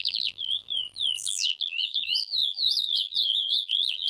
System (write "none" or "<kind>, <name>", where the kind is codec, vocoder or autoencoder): vocoder, BigVGAN v2